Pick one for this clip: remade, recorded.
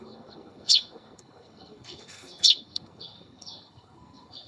remade